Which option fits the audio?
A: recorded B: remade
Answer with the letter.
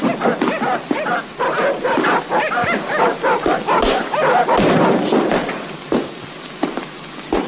A